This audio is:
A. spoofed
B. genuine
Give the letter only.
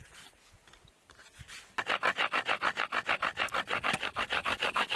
B